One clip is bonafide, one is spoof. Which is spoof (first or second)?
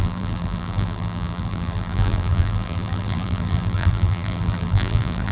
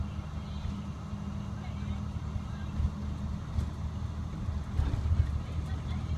first